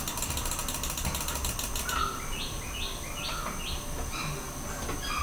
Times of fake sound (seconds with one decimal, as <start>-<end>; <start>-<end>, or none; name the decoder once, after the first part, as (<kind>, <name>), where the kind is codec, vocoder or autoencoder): none